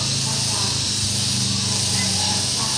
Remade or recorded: recorded